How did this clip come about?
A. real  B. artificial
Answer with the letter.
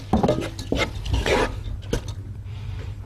A